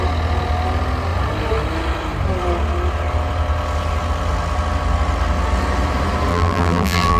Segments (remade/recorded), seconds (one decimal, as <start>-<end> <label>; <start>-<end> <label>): 0.0-6.3 recorded; 6.3-7.2 remade